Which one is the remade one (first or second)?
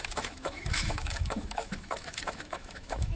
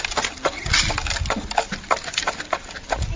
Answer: first